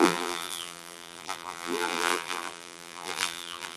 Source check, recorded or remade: remade